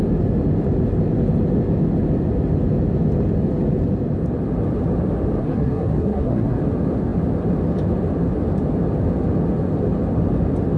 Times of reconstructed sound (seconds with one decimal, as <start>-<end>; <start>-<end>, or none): 5.4-6.6